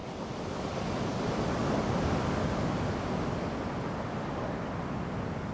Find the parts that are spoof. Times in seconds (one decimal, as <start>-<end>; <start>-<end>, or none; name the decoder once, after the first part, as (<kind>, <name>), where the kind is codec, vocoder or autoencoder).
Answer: none